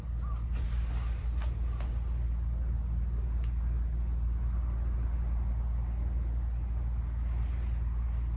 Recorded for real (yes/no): yes